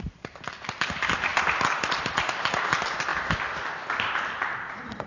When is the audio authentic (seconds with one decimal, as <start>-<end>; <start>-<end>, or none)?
0.0-1.3; 2.3-3.1